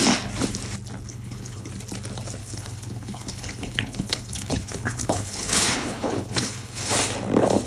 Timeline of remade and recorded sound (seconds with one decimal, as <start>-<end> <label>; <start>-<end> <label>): 0.0-1.1 recorded; 1.1-1.7 remade; 1.7-2.4 recorded; 2.4-6.9 remade; 6.9-7.7 recorded